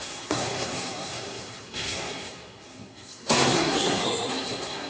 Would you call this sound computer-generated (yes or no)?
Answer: yes